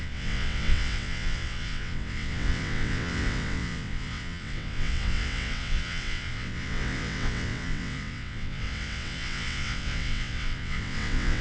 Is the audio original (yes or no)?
no